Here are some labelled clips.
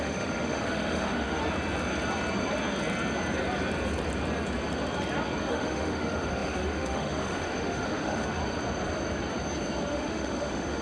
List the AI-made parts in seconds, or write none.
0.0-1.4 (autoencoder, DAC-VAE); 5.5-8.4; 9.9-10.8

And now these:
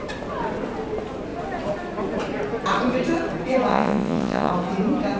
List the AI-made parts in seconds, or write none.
3.7-4.5 (vocoder, Vocos)